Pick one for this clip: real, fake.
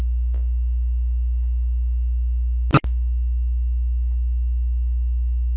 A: real